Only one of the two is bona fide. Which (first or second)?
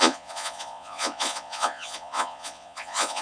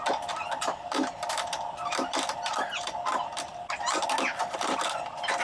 second